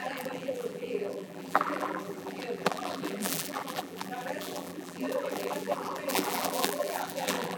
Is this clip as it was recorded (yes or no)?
no